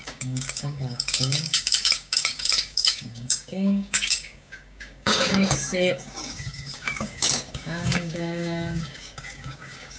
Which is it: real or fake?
fake